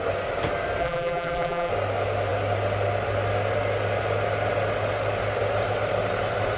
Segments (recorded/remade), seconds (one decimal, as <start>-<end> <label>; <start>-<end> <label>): 0.0-0.8 recorded; 0.8-1.7 remade; 1.7-6.6 recorded